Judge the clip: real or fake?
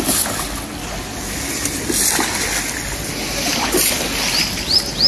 real